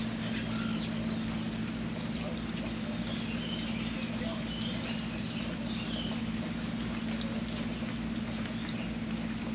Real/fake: real